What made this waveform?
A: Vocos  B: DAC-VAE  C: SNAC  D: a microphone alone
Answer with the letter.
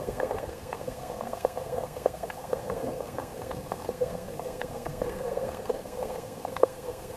C